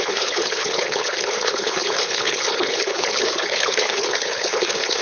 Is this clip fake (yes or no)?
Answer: yes